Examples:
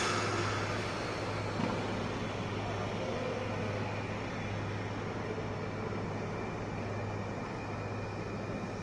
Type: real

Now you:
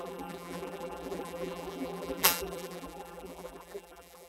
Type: fake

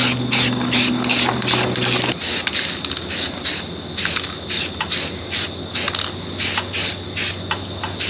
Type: real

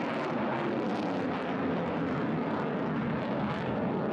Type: real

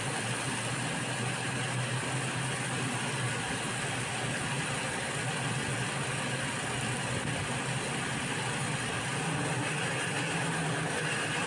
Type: real